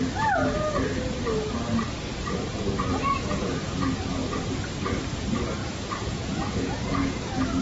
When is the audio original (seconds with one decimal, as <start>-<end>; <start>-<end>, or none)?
0.0-2.9; 3.7-5.6; 7.1-7.6